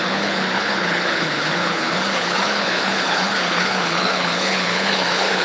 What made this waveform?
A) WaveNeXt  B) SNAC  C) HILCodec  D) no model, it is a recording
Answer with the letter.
C